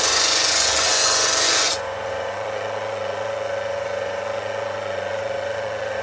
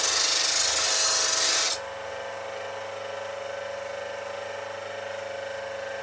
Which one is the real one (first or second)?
second